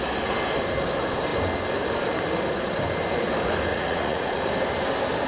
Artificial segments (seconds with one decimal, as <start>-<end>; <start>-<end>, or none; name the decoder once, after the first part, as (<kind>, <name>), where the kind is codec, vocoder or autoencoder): 3.7-4.5 (vocoder, Vocos)